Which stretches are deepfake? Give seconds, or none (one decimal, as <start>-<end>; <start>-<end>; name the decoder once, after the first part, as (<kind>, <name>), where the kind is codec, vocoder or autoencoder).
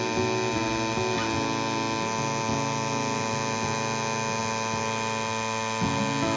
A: none